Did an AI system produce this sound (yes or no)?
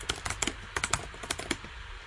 no